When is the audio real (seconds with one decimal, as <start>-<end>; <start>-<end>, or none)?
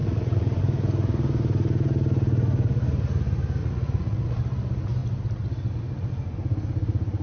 0.6-3.6; 4.4-7.2